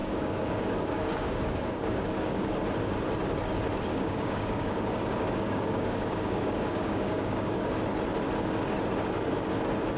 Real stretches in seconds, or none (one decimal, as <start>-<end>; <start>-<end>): 2.5-3.9; 7.7-10.0